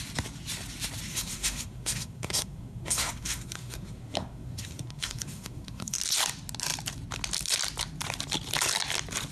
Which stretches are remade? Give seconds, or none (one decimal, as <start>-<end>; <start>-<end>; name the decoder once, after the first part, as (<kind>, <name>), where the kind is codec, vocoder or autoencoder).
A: 1.1-6.0 (codec, SNAC)